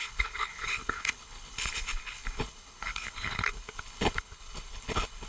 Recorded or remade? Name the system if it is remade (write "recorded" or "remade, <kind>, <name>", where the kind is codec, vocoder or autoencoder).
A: remade, codec, HILCodec